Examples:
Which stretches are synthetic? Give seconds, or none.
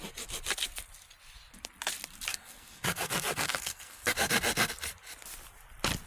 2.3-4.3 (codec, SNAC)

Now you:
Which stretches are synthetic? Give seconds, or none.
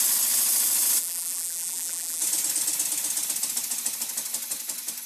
1.0-2.2 (vocoder, BigVGAN v2)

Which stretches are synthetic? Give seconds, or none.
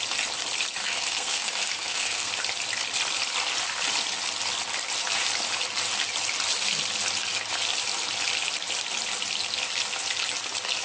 0.8-2.3 (codec, SNAC)